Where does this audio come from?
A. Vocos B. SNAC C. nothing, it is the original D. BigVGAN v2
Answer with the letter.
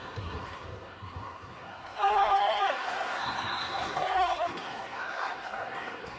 B